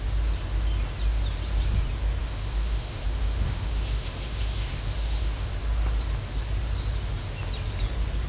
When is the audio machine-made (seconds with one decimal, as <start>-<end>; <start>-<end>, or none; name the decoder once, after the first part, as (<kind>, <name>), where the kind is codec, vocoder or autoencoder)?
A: 2.2-5.5 (autoencoder, DAC-VAE)